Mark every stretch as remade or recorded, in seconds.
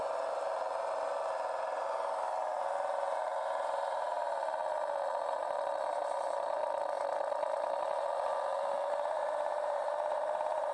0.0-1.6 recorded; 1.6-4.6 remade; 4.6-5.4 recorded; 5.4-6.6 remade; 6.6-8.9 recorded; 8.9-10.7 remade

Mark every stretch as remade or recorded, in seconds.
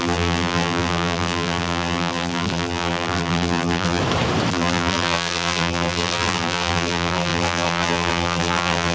0.0-4.0 remade; 4.0-4.5 recorded; 4.5-8.9 remade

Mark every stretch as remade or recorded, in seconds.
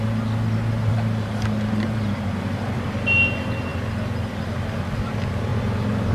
0.0-0.9 recorded; 0.9-2.9 remade; 2.9-6.1 recorded